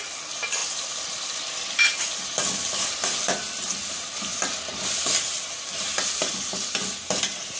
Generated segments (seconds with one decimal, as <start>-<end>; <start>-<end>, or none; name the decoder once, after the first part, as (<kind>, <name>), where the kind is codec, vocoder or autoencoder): 0.6-3.9 (vocoder, BigVGAN v2); 6.2-6.7

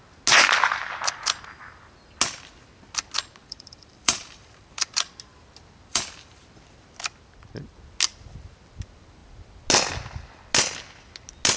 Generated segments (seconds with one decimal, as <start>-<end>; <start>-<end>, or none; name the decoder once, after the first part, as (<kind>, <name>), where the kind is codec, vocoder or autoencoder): 3.4-4.9 (vocoder, BigVGAN v2); 5.9-6.4

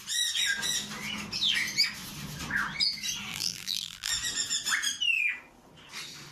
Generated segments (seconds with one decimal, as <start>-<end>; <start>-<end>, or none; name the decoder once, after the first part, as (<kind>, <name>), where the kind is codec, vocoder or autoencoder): 3.3-4.1 (vocoder, BigVGAN v2)

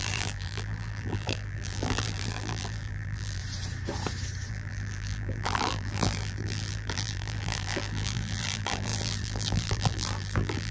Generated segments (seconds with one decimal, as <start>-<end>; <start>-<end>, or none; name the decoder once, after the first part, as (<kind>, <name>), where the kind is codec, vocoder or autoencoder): 0.0-3.4 (vocoder, BigVGAN v2); 4.5-10.7